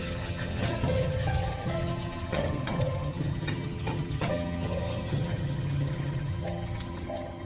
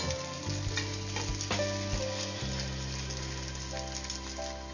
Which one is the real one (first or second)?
second